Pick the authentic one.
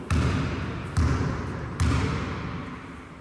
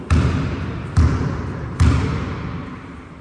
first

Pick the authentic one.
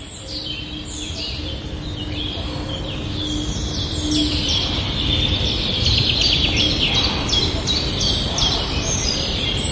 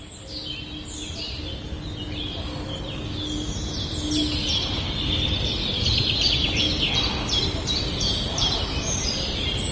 second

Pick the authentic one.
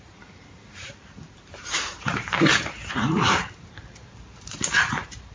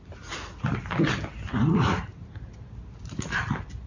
second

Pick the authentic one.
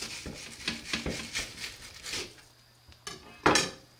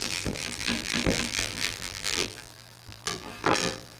first